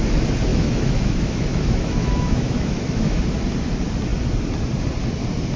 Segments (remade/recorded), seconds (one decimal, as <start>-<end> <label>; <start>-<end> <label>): 0.0-0.5 recorded; 0.5-3.2 remade; 3.2-5.6 recorded

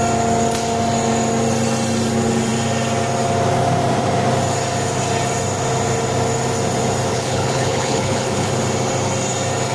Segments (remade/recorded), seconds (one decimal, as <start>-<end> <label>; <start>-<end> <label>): 0.0-7.1 recorded; 7.1-8.5 remade; 8.5-9.7 recorded

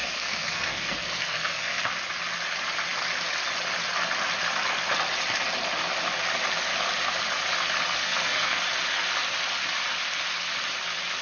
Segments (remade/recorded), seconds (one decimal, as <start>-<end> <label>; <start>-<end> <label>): 0.0-1.8 remade; 1.8-8.0 recorded; 8.0-8.6 remade; 8.6-11.2 recorded

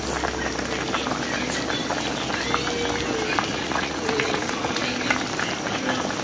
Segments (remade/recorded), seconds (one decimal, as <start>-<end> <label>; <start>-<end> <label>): 0.0-3.5 recorded; 3.5-4.7 remade; 4.7-6.2 recorded